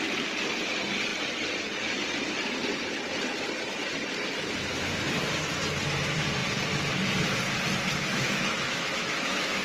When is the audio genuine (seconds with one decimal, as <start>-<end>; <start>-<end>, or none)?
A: 0.0-8.1